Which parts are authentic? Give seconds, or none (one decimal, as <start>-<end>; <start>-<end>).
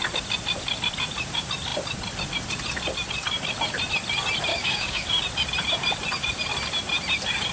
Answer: 0.0-4.5; 5.1-7.5